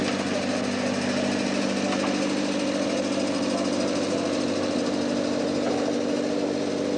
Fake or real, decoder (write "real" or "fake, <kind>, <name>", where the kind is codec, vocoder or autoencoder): real